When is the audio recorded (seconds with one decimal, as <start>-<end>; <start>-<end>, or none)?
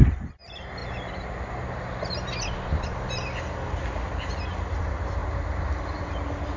0.8-4.8; 5.2-5.8